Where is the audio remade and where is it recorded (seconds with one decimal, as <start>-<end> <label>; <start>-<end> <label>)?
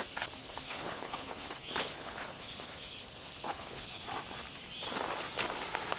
0.0-0.4 recorded; 0.4-4.0 remade; 4.0-6.0 recorded